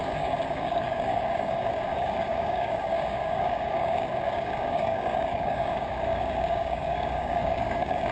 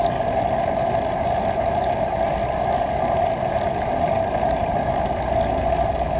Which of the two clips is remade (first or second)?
first